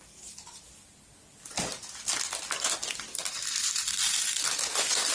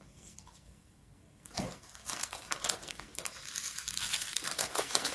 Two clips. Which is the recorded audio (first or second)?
first